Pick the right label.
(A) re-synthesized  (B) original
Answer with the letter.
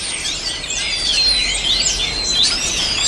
B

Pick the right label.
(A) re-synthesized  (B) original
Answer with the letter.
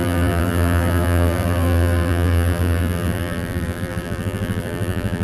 A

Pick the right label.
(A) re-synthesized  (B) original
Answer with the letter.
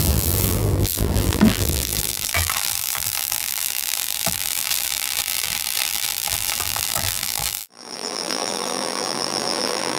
A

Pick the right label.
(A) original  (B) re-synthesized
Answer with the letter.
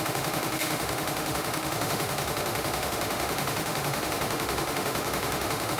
B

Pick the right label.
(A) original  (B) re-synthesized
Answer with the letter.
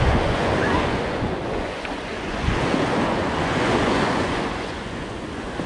B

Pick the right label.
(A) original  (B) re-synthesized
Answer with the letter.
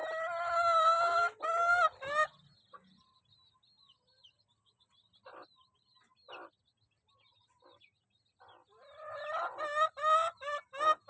A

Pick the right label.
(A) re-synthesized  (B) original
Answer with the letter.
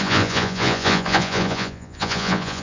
A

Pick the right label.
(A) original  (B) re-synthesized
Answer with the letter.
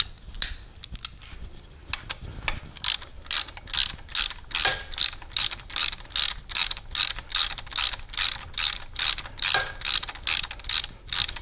A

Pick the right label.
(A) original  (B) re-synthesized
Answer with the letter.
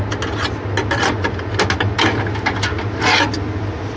A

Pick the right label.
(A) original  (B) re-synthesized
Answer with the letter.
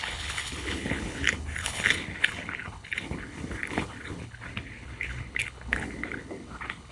B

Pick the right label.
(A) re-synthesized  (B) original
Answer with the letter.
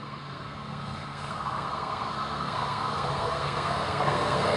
A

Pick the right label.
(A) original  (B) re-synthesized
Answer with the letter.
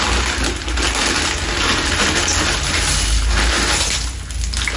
A